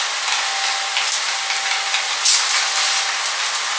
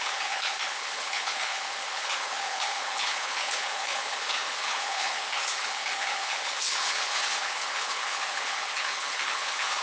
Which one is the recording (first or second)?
first